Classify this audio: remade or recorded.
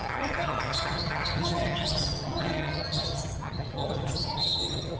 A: remade